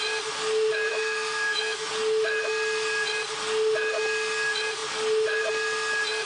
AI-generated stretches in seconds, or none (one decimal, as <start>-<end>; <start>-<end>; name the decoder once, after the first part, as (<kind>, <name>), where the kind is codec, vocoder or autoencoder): 0.9-1.9 (autoencoder, DAC-VAE)